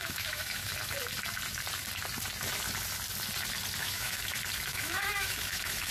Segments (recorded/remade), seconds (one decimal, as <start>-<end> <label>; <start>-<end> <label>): 0.0-0.7 remade; 0.7-3.8 recorded; 3.8-4.2 remade; 4.2-4.7 recorded; 4.7-5.9 remade